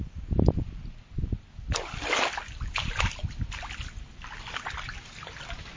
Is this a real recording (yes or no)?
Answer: yes